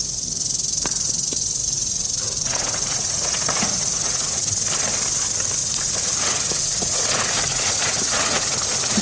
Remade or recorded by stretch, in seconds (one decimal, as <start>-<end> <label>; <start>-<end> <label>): 0.0-1.6 recorded; 1.6-4.4 remade; 4.4-5.6 recorded; 5.6-9.0 remade